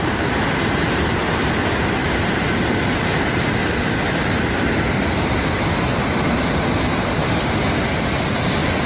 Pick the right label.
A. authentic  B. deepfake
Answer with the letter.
A